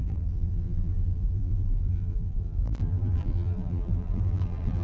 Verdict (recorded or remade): remade